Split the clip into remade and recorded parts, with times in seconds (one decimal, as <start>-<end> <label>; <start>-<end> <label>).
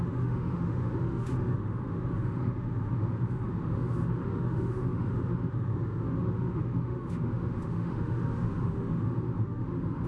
0.0-10.1 remade